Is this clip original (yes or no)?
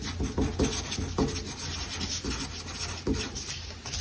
yes